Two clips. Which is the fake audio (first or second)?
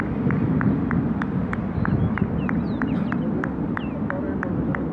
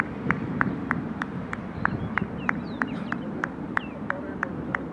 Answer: second